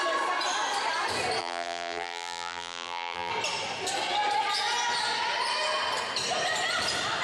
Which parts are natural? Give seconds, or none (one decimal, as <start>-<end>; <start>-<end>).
0.0-1.4; 3.3-7.2